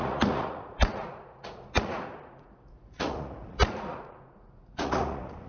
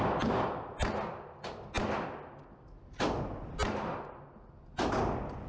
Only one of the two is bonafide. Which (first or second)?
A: second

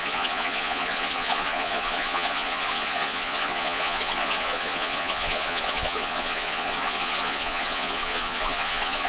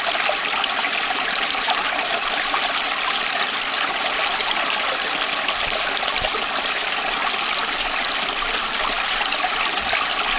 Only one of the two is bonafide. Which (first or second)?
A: second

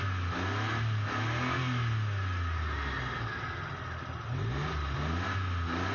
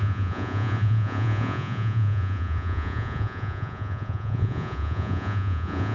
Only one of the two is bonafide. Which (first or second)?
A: first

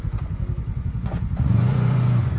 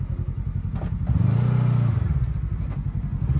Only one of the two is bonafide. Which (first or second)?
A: second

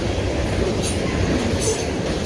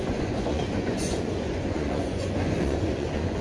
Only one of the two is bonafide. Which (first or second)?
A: first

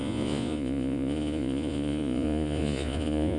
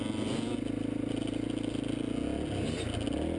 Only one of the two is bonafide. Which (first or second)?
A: second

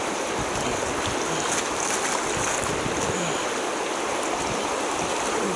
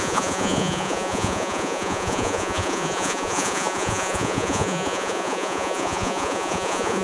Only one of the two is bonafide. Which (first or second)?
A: first